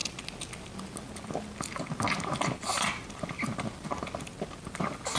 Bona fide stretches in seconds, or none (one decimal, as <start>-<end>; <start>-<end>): 0.0-5.2

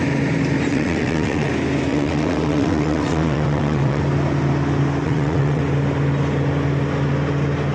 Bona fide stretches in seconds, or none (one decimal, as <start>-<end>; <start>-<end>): 0.0-0.7; 1.5-1.9; 4.0-5.0; 5.6-7.7

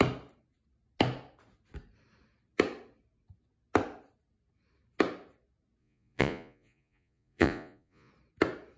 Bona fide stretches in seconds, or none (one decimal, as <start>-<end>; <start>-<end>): 0.0-5.8; 8.1-8.8

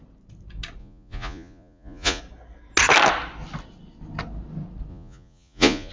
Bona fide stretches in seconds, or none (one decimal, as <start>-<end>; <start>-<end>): 0.0-0.8; 2.2-4.9

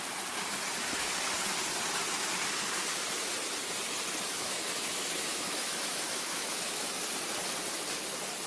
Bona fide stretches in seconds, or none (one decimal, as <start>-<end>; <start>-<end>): 0.0-4.3; 6.9-8.5

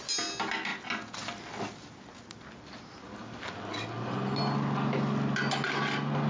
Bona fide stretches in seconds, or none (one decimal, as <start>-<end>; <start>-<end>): 0.0-6.3

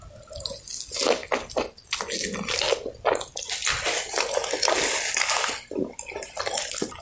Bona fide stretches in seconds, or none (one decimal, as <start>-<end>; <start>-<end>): 0.0-7.0